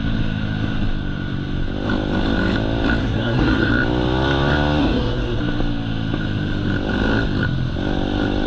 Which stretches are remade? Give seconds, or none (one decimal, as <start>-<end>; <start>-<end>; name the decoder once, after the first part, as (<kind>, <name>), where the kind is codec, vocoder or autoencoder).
3.0-3.7 (codec, SNAC); 4.8-5.4